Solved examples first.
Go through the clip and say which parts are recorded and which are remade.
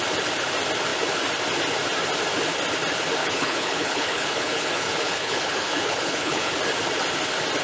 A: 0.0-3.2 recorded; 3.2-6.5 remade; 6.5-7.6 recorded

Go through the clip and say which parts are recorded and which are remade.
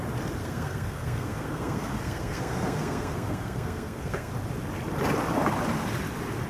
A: 0.0-0.4 recorded; 0.4-4.3 remade; 4.3-6.5 recorded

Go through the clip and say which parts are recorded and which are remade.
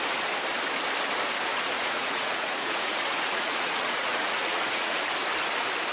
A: 0.0-1.5 recorded; 1.5-5.0 remade; 5.0-5.9 recorded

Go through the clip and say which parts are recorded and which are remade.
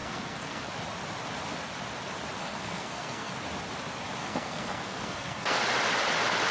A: 0.0-0.7 remade; 0.7-2.4 recorded; 2.4-3.3 remade; 3.3-4.2 recorded; 4.2-5.6 remade; 5.6-6.5 recorded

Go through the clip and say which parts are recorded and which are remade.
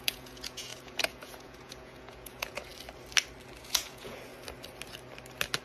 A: 0.0-2.7 remade; 2.7-3.6 recorded; 3.6-4.3 remade; 4.3-5.6 recorded